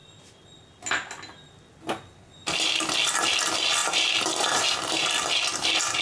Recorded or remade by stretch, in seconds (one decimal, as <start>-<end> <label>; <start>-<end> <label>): 0.0-6.0 recorded